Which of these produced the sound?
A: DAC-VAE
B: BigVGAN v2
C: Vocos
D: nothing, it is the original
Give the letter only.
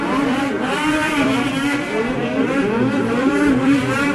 B